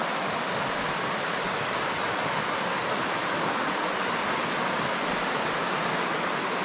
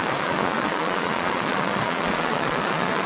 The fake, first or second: second